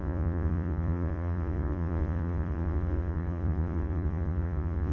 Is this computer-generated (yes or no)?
yes